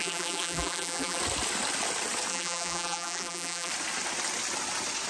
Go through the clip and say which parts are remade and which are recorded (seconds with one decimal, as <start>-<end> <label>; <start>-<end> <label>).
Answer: 0.0-1.2 remade; 1.2-2.3 recorded; 2.3-3.7 remade; 3.7-5.1 recorded